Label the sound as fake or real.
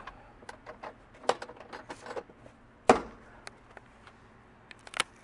real